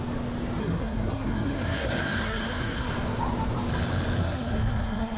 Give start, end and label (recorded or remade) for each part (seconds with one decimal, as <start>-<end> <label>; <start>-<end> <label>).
0.0-0.6 recorded; 0.6-2.9 remade; 2.9-4.2 recorded; 4.2-5.2 remade